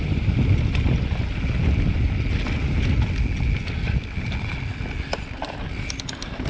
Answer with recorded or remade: recorded